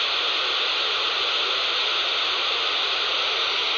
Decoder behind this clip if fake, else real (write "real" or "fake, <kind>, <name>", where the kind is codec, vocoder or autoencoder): real